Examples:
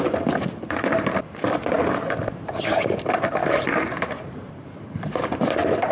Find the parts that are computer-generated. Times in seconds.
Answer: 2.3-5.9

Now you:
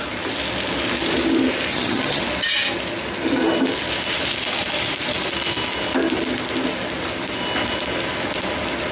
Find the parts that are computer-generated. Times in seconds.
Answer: 1.7-2.2

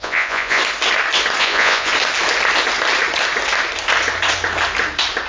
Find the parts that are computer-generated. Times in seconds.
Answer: 0.0-0.6; 1.4-1.9